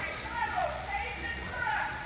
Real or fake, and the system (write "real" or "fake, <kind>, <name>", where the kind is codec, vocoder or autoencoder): fake, vocoder, Vocos